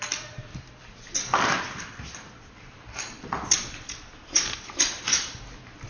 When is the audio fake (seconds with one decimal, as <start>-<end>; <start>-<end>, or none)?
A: 0.5-2.4; 4.1-4.8

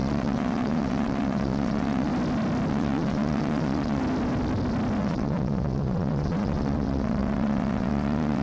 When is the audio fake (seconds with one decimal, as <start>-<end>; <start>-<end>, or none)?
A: 0.0-2.1; 2.7-4.0; 5.0-8.4

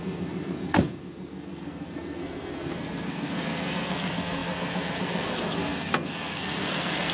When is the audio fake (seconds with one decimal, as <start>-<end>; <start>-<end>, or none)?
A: 0.0-7.1

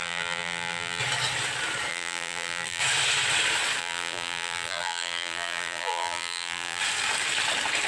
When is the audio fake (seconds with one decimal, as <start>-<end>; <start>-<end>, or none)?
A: 0.0-1.0; 1.9-2.8; 3.8-6.8

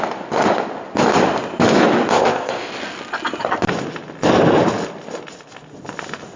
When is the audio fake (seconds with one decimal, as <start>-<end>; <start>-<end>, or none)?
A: 2.1-2.7

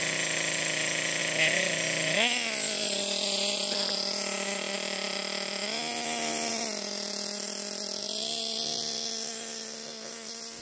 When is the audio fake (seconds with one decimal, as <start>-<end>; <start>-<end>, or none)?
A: none

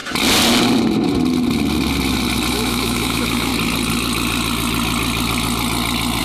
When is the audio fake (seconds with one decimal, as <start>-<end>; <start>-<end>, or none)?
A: 2.5-3.5

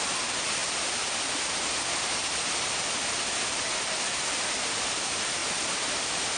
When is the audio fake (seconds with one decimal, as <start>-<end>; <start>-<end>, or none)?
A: none